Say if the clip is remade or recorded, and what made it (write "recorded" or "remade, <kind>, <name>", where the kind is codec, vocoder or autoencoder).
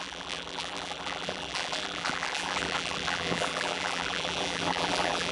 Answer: remade, vocoder, BigVGAN v2